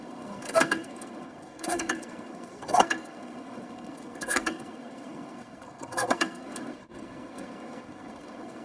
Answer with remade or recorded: remade